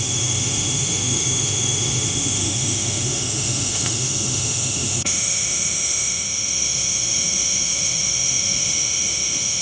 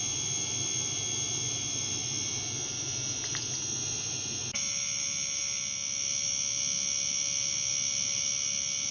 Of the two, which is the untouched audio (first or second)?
second